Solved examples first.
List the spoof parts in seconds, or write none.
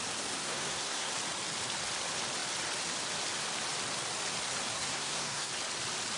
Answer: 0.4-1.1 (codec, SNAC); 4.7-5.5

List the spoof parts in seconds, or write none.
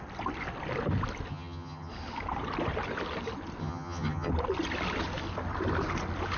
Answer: 1.3-1.9 (vocoder, HiFi-GAN); 3.6-4.3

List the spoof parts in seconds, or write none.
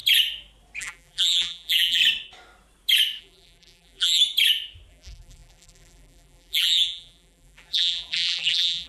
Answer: 0.8-2.0 (vocoder, BigVGAN v2); 3.2-4.2; 4.9-8.9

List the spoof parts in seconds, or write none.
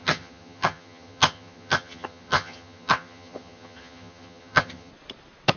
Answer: 0.0-4.9 (vocoder, HiFi-GAN)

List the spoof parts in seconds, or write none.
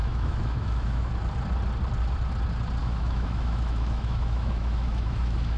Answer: 0.0-1.1 (autoencoder, DAC-VAE); 2.8-5.6